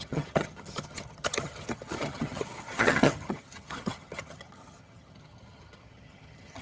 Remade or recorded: remade